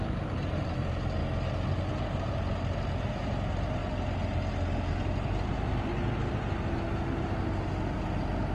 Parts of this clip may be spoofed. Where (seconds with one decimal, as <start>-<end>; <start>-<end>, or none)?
0.0-1.2; 2.3-3.8; 4.9-5.9

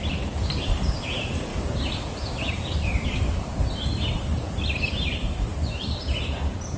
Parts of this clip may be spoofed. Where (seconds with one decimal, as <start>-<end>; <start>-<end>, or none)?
0.0-3.5; 4.3-6.8

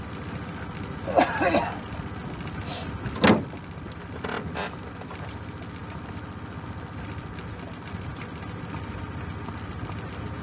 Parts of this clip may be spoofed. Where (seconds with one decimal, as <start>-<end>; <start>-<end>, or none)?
none

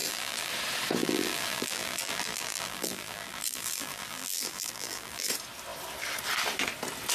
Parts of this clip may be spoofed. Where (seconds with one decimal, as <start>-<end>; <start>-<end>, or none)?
0.0-0.5; 1.0-5.3

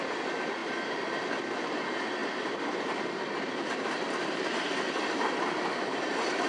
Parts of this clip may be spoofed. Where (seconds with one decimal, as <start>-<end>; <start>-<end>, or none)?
0.6-1.3; 2.2-5.9